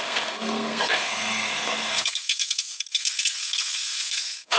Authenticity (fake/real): fake